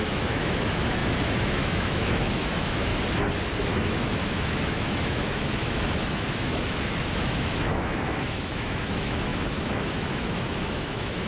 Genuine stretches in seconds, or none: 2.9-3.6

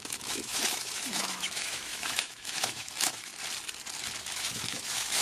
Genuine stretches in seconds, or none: 3.3-4.2

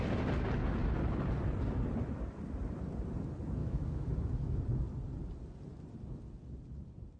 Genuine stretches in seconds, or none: 0.0-3.6; 4.6-7.2

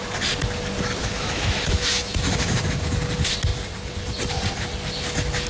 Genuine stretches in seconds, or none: 0.0-1.0; 2.6-5.5